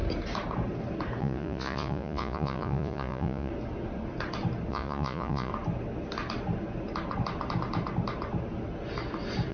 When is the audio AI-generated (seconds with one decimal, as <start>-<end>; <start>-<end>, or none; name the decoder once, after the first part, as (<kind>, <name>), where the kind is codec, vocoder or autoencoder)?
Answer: 1.2-3.5 (vocoder, Vocos); 4.7-5.5